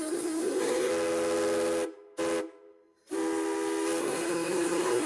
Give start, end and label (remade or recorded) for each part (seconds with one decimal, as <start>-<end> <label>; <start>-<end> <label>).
0.0-0.9 remade; 0.9-4.0 recorded; 4.0-5.1 remade